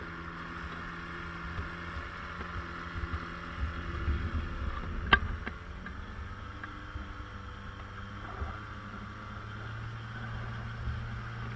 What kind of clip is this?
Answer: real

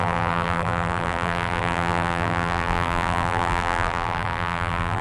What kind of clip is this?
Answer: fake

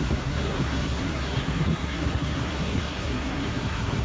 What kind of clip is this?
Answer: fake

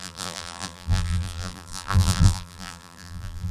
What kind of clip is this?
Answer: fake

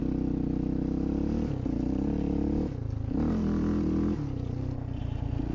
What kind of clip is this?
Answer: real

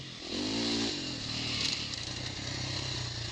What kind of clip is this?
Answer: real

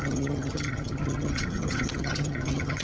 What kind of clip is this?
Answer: fake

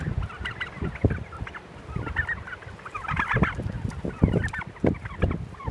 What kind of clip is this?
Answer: real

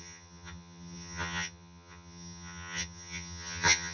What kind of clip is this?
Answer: fake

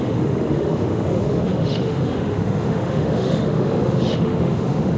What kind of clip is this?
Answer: fake